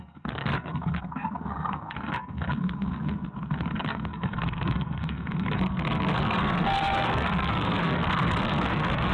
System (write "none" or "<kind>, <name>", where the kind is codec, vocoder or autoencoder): codec, SNAC